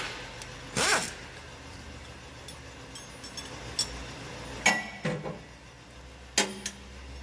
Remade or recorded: recorded